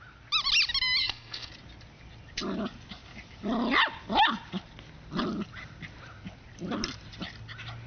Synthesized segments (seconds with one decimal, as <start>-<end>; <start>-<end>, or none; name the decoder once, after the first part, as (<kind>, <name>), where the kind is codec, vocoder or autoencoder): 1.0-1.5 (codec, SNAC)